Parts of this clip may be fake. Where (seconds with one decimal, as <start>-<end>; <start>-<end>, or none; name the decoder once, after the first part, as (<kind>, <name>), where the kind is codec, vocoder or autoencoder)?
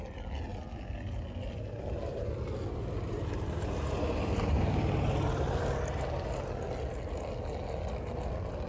none